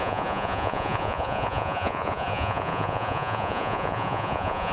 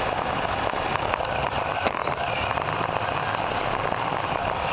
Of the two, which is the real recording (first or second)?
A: second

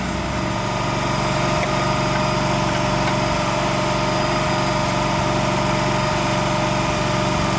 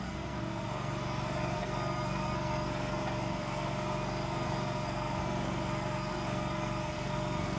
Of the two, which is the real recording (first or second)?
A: first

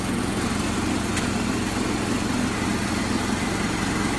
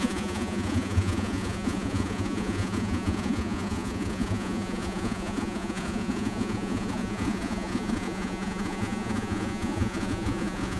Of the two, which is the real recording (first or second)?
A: first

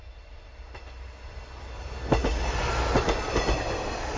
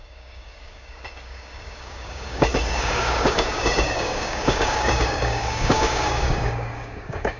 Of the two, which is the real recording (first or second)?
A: first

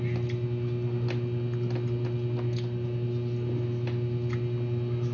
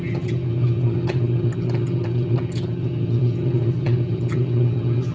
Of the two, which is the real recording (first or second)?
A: first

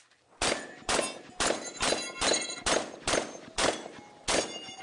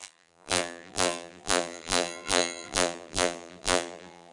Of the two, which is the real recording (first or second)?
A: first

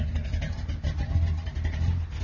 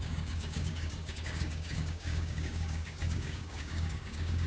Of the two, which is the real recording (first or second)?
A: first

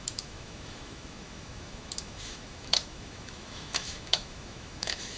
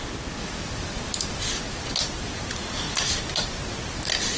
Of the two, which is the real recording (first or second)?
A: second